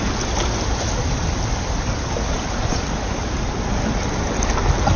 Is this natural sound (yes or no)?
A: yes